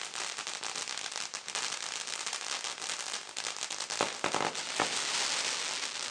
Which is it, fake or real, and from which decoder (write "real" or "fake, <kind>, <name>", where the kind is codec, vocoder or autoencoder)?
real